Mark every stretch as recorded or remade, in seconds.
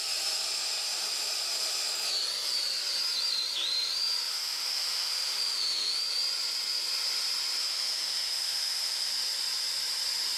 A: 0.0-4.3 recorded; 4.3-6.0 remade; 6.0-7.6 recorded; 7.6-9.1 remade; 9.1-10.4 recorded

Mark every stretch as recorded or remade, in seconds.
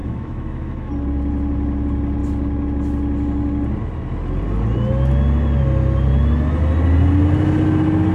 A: 0.0-0.9 remade; 0.9-8.1 recorded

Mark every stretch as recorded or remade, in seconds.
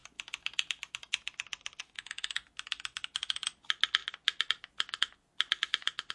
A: 0.0-1.8 recorded; 1.8-2.3 remade; 2.3-6.1 recorded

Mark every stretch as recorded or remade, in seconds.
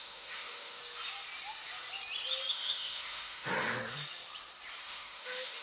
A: 0.0-0.8 remade; 0.8-2.5 recorded; 2.5-3.5 remade; 3.5-4.8 recorded; 4.8-5.6 remade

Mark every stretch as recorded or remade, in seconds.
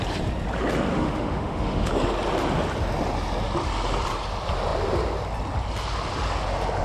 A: 0.0-0.9 recorded; 0.9-1.9 remade; 1.9-6.8 recorded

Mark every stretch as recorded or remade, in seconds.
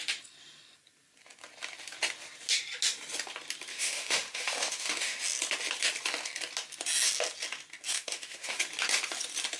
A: 0.0-3.7 recorded; 3.7-5.2 remade; 5.2-7.9 recorded; 7.9-8.6 remade; 8.6-9.6 recorded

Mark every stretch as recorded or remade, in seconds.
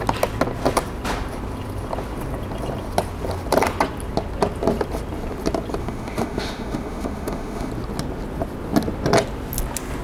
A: 0.0-5.8 recorded; 5.8-7.7 remade; 7.7-10.0 recorded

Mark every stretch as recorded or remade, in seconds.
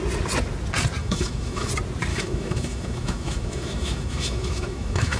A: 0.0-1.0 recorded; 1.0-1.7 remade; 1.7-2.1 recorded; 2.1-5.2 remade